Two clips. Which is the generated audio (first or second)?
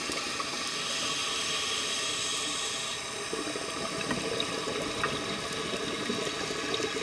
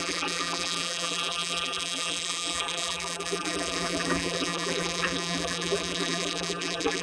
second